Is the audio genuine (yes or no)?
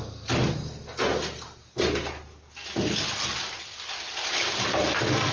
yes